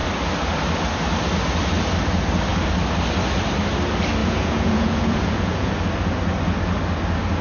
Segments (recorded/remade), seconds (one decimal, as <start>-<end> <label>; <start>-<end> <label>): 0.0-4.2 recorded; 4.2-5.7 remade; 5.7-7.4 recorded